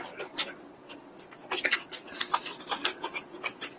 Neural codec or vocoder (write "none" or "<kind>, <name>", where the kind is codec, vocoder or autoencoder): none